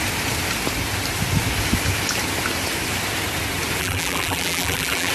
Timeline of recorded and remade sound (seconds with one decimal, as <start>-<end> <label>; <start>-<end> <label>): 0.0-3.8 recorded; 3.8-5.1 remade